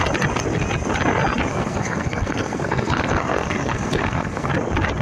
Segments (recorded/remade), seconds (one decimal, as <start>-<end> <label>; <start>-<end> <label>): 0.0-1.5 recorded; 1.5-4.5 remade; 4.5-5.0 recorded